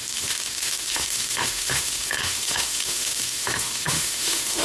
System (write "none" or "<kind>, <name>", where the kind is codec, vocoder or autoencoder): autoencoder, DAC-VAE